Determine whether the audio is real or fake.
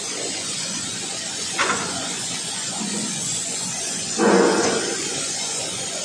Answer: fake